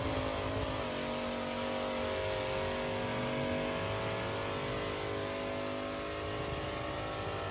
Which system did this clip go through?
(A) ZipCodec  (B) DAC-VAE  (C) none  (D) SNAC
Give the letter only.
C